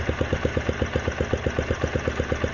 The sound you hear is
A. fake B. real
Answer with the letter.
B